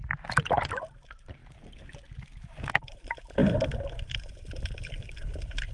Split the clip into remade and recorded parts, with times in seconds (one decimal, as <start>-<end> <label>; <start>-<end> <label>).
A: 0.0-1.4 remade; 1.4-2.4 recorded; 2.4-3.4 remade; 3.4-5.0 recorded; 5.0-5.7 remade